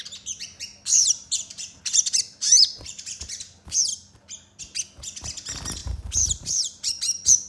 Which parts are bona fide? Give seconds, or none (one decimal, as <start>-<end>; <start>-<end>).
0.0-0.9; 1.8-2.4; 3.3-5.8; 6.9-7.5